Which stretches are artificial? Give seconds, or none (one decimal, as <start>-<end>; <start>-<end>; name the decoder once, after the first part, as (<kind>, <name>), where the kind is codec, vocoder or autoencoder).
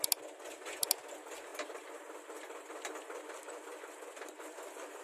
none